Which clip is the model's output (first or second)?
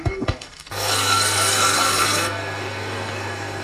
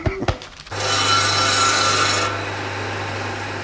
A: first